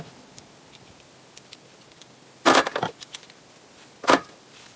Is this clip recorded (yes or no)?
yes